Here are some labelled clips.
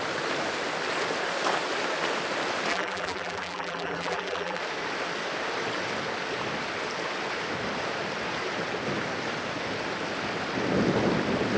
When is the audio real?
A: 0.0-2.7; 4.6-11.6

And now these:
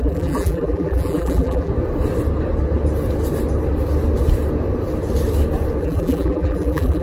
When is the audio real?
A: 1.7-5.8

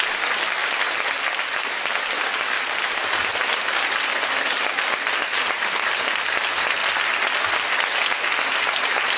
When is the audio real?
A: 0.0-0.6; 3.2-9.2

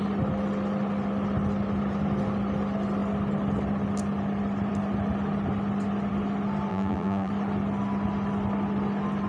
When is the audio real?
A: 0.0-6.7; 7.3-9.3

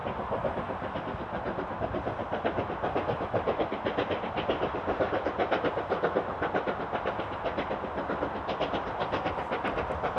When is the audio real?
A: 0.0-10.2

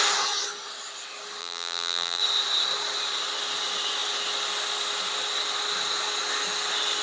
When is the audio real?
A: 0.0-1.4; 2.2-7.0

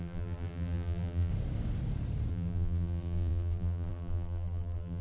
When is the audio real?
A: 1.3-2.3

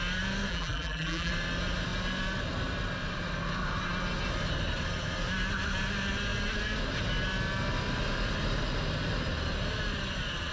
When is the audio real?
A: 0.0-0.5; 1.3-10.5